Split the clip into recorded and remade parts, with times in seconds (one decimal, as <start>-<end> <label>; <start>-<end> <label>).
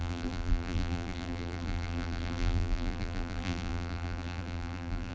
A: 0.0-5.1 remade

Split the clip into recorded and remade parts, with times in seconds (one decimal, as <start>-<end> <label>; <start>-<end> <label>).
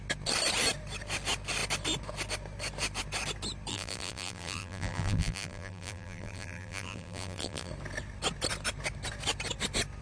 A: 0.0-3.7 recorded; 3.7-7.7 remade; 7.7-10.0 recorded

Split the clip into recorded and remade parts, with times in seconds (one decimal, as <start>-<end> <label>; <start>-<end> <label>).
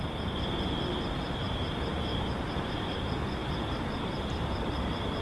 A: 0.0-2.1 recorded; 2.1-3.0 remade; 3.0-3.4 recorded; 3.4-5.2 remade